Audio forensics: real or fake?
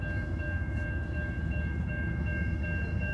fake